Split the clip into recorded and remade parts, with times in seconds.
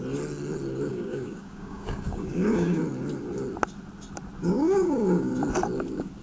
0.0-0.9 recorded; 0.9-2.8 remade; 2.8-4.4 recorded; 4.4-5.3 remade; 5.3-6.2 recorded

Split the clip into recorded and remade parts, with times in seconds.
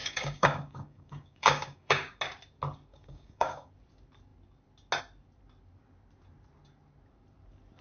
0.0-2.2 remade; 2.2-2.9 recorded; 2.9-3.7 remade; 3.7-7.8 recorded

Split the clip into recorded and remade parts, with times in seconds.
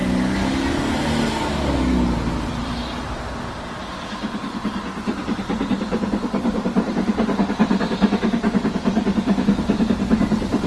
0.0-10.7 recorded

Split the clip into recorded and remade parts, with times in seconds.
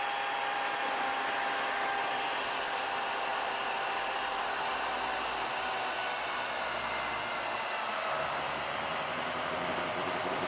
0.0-10.5 recorded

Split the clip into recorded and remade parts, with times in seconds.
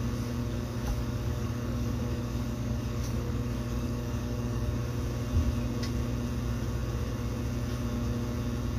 0.0-0.4 recorded; 0.4-4.9 remade; 4.9-8.8 recorded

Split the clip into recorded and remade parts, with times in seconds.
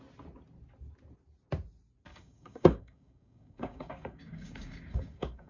0.0-2.1 recorded; 2.1-5.5 remade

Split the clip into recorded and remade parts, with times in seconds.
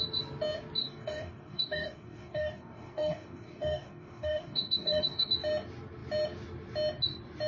0.0-0.8 recorded; 0.8-5.3 remade; 5.3-7.5 recorded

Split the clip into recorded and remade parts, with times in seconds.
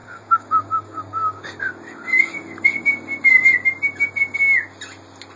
0.0-1.6 remade; 1.6-5.4 recorded